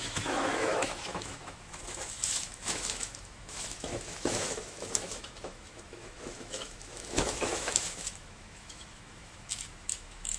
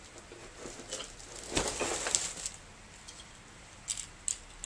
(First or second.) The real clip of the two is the second